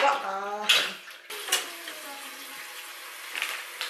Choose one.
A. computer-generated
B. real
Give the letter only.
B